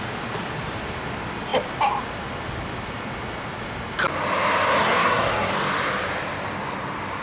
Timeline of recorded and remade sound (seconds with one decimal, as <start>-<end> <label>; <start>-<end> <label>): 0.0-4.8 recorded; 4.8-5.5 remade; 5.5-7.2 recorded